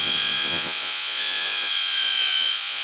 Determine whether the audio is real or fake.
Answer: fake